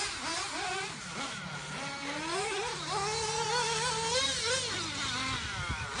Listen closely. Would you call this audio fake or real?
real